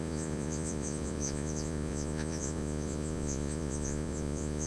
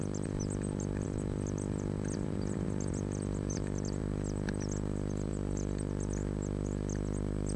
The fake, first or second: first